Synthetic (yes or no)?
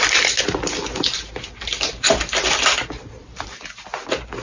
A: no